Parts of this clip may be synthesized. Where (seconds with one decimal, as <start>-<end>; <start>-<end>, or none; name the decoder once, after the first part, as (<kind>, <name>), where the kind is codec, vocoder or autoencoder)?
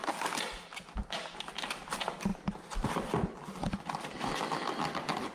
none